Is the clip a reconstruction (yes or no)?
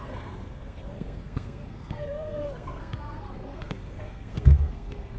yes